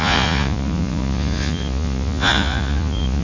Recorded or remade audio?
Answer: remade